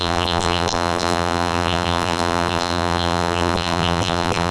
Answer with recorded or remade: remade